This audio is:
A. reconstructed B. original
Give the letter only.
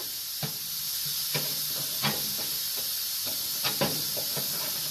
B